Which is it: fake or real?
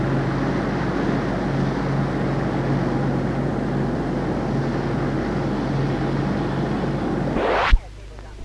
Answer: real